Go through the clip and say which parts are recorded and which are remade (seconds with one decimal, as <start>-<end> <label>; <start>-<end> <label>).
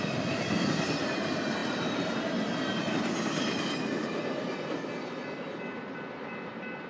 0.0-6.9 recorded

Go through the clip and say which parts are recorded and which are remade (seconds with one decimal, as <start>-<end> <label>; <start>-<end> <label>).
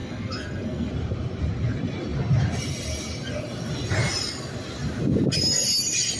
0.0-0.9 remade; 0.9-6.2 recorded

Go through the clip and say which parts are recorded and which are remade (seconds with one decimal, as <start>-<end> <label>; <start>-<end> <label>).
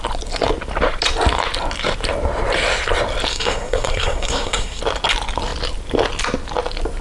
0.0-3.3 recorded; 3.3-4.8 remade; 4.8-7.0 recorded